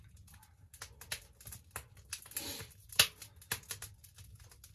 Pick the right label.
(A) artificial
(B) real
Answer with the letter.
B